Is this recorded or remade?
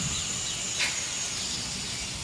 recorded